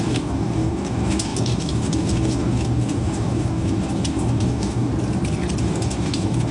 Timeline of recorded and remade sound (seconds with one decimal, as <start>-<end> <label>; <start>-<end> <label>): 0.0-4.9 remade; 4.9-5.6 recorded; 5.6-6.5 remade